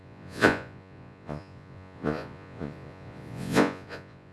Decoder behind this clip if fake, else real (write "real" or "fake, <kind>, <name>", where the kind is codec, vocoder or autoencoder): fake, vocoder, Vocos